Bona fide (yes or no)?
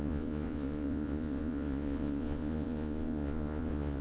no